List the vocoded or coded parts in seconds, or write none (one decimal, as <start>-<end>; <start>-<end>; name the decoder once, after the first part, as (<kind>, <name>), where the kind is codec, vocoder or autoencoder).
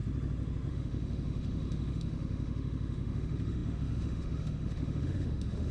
0.7-5.7 (autoencoder, DAC-VAE)